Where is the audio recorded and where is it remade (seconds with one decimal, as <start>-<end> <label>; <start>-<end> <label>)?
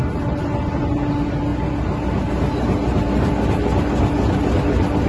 0.0-5.1 recorded